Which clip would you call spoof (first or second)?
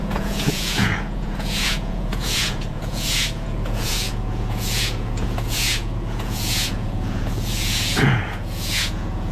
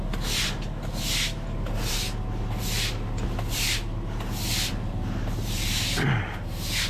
first